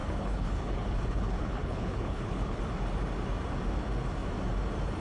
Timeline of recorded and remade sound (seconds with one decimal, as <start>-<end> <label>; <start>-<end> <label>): 0.0-2.6 remade; 2.6-5.0 recorded